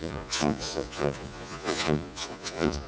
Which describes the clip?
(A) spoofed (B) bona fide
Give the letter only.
A